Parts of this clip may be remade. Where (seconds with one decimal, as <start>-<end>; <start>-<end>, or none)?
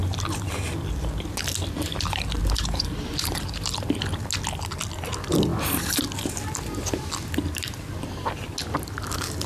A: 0.0-0.5; 2.4-3.8